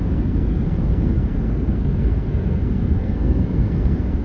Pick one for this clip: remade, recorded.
remade